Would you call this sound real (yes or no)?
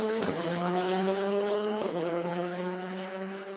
no